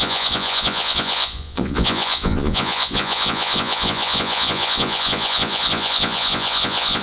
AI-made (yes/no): yes